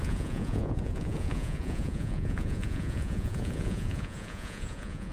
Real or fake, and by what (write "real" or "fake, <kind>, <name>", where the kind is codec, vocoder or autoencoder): fake, vocoder, Vocos